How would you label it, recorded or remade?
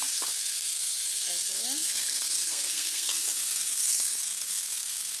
remade